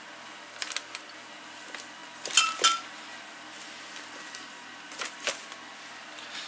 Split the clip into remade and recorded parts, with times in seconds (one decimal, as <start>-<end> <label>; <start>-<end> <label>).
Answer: 0.0-6.5 recorded